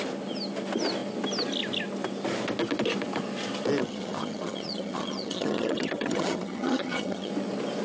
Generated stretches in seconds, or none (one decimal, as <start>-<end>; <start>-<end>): 3.8-7.3